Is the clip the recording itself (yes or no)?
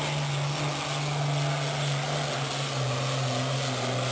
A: yes